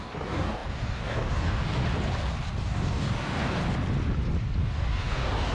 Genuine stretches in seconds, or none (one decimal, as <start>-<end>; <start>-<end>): 1.8-2.6; 3.6-4.6